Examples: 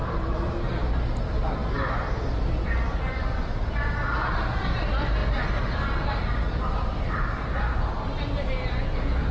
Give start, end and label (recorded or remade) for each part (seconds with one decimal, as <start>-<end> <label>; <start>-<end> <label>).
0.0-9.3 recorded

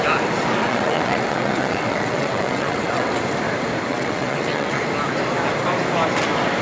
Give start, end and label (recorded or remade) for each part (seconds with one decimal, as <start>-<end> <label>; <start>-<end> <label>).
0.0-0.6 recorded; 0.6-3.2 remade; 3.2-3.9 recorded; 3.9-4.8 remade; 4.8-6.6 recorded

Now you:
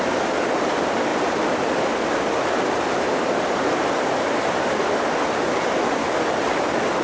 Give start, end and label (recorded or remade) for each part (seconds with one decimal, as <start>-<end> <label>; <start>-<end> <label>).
0.0-7.0 recorded